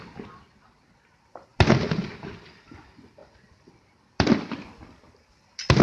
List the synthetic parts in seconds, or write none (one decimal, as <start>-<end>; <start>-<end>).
3.2-4.6